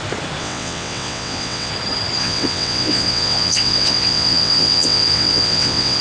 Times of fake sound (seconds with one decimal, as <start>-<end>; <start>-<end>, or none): 0.4-1.7; 2.2-6.0